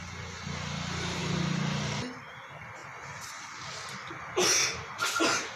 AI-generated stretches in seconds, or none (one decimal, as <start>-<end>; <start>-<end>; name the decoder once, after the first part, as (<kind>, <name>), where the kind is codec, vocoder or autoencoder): none